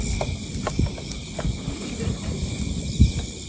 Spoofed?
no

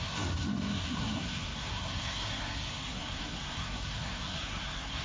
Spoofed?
yes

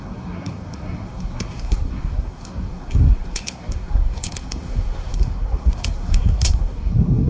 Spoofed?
yes